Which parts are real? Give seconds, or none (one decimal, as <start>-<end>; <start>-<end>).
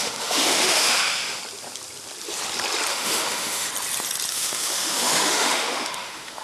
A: 1.4-2.9; 3.7-4.3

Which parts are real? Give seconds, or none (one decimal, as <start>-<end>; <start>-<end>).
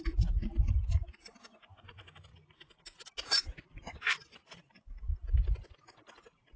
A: 0.0-6.6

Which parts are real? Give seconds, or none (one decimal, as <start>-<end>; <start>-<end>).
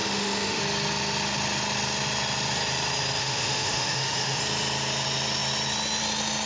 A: 0.6-3.2; 4.4-6.5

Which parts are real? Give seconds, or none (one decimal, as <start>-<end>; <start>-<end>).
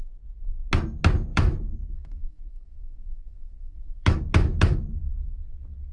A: 0.0-1.3; 4.8-5.9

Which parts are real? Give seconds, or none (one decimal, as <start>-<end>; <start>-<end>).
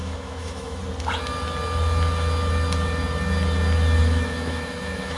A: 0.8-4.0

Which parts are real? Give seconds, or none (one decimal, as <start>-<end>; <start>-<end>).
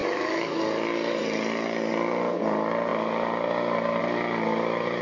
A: 0.6-5.0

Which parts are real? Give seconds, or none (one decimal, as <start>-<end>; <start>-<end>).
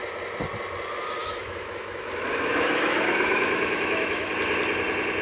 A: 0.0-1.2; 4.3-5.2